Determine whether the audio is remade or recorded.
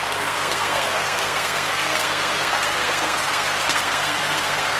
remade